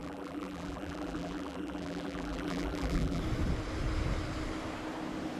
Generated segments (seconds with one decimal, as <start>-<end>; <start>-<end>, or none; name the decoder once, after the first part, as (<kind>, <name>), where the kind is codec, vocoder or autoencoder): 0.0-3.2 (vocoder, BigVGAN v2)